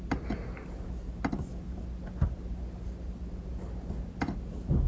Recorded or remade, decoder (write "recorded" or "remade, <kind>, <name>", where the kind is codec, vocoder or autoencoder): recorded